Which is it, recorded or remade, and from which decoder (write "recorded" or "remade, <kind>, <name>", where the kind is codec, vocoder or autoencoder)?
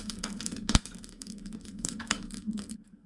remade, codec, SNAC